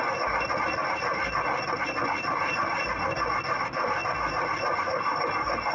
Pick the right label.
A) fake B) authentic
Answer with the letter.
B